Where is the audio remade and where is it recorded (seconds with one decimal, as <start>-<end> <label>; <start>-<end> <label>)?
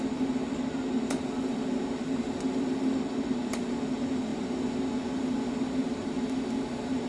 0.0-7.1 recorded